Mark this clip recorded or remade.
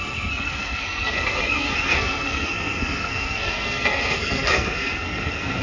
remade